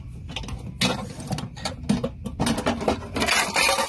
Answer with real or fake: real